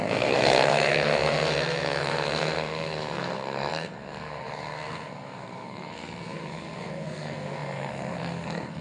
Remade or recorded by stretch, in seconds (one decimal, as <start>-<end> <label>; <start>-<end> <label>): 0.0-8.8 remade